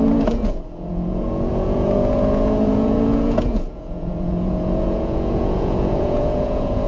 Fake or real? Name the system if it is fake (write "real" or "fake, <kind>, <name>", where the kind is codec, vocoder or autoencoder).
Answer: fake, vocoder, Vocos